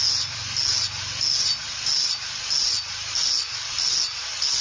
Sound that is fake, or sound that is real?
real